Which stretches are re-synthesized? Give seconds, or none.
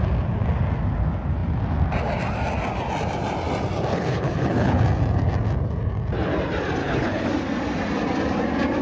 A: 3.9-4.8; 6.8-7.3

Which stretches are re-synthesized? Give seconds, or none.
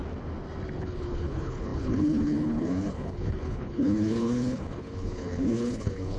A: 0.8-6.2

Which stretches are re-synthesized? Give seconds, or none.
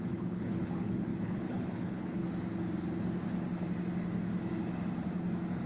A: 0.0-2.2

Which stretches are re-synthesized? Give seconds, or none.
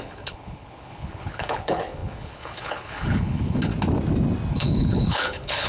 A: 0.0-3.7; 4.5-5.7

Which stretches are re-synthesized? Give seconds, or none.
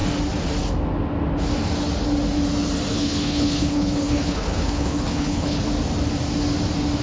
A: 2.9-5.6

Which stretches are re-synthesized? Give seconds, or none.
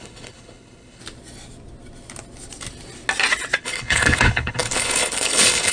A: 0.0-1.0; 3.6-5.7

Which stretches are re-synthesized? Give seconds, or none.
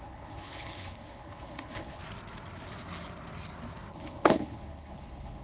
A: 0.0-2.0; 3.9-5.4